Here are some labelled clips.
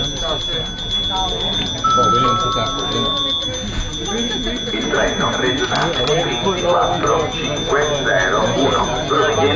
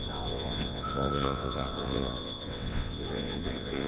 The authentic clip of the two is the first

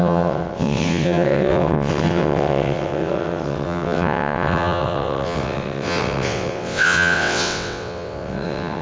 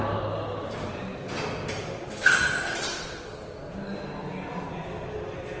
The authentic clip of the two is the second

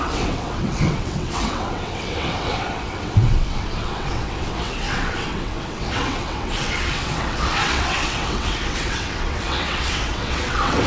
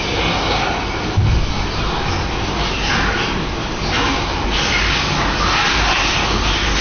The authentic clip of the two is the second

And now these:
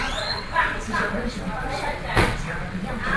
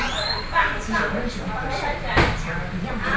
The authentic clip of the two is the second